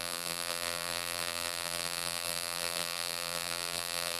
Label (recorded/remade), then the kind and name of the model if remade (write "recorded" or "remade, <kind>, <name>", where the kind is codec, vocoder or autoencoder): remade, vocoder, BigVGAN v2